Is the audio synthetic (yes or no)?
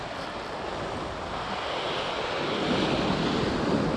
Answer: no